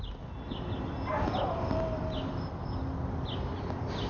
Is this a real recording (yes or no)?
yes